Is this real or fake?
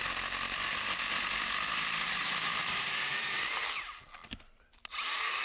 real